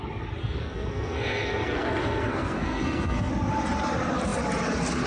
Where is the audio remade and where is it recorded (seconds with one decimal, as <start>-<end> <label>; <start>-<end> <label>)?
0.0-0.4 recorded; 0.4-3.3 remade; 3.3-5.1 recorded